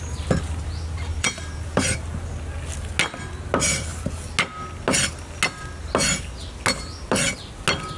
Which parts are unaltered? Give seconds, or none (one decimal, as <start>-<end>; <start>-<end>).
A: 0.0-1.1; 2.2-8.0